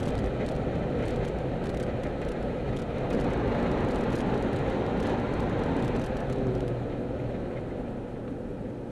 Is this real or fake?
real